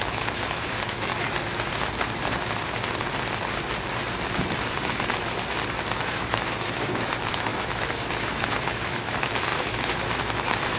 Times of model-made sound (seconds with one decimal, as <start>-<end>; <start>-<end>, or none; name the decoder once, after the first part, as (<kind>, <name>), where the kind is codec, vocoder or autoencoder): 0.0-1.1 (autoencoder, DAC-VAE); 6.0-10.8